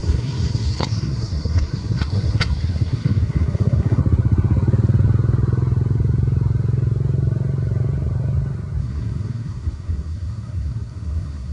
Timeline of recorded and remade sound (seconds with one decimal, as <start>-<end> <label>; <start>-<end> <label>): 0.0-4.0 remade; 4.0-8.8 recorded; 8.8-11.5 remade